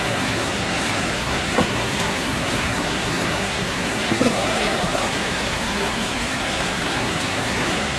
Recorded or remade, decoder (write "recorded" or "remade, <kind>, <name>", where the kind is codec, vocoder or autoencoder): remade, codec, SNAC